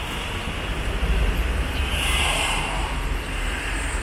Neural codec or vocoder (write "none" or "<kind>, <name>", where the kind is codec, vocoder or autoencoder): vocoder, BigVGAN v2